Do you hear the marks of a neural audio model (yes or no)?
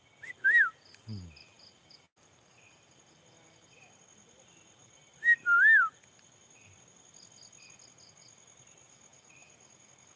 no